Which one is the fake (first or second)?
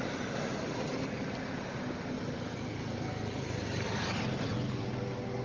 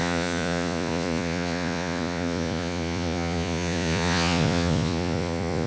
second